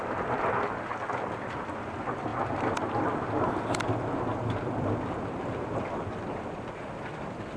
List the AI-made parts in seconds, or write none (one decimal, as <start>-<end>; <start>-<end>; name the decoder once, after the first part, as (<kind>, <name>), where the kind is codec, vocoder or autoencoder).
none